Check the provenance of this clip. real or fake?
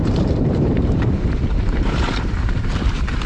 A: fake